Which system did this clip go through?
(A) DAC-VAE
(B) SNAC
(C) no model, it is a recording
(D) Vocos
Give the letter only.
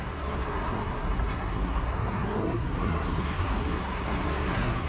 B